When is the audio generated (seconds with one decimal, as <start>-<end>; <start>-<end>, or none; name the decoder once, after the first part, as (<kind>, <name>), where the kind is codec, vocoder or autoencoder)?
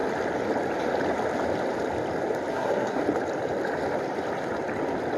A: 2.5-3.0 (codec, SNAC)